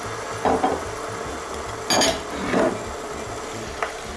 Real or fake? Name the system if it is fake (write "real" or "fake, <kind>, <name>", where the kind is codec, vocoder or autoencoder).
real